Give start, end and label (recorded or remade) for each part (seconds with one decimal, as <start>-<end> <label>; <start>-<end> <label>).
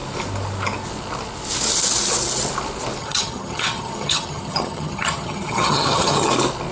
0.0-3.0 recorded; 3.0-6.3 remade; 6.3-6.7 recorded